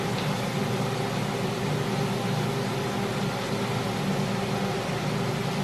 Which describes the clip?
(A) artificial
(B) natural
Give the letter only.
B